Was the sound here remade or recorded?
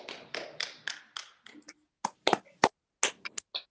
recorded